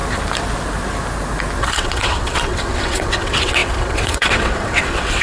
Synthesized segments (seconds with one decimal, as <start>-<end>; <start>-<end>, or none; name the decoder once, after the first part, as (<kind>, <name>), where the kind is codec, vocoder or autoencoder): 1.6-5.2 (vocoder, WaveNeXt)

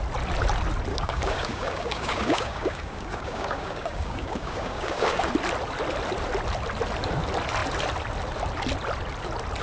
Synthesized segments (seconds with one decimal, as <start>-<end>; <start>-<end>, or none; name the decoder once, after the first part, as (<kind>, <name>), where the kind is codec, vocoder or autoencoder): 0.9-5.3 (codec, DAC)

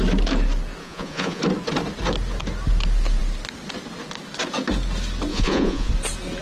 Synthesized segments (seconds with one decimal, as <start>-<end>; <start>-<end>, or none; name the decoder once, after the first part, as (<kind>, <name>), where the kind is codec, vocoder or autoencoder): 0.8-1.4 (vocoder, Vocos); 5.3-5.9

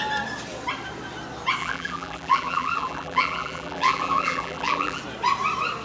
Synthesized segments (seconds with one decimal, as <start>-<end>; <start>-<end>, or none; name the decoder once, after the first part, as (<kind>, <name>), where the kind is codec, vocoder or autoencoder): 1.6-5.0 (vocoder, BigVGAN v2)